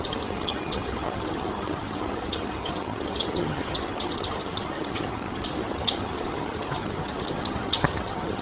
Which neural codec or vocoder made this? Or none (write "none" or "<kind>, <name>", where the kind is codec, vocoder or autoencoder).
vocoder, HiFi-GAN